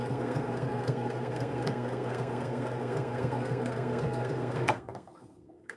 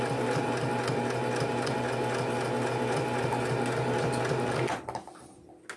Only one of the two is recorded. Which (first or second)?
second